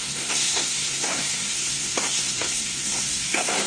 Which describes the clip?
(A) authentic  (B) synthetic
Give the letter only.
B